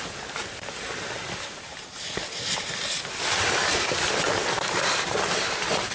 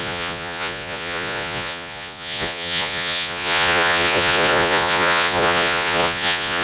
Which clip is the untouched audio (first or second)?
first